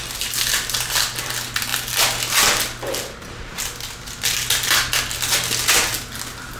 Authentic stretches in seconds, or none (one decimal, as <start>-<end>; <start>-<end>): 0.0-6.6